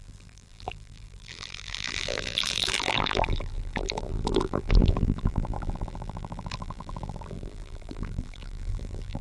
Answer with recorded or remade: remade